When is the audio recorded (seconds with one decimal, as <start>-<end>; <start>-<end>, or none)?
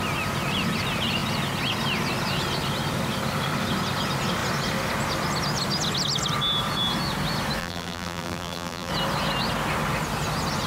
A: 0.0-7.6; 8.9-10.7